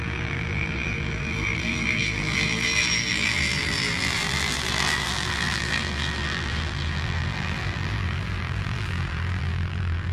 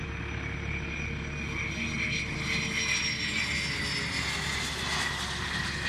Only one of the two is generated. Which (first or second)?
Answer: first